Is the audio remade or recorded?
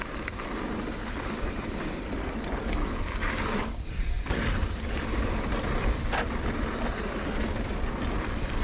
remade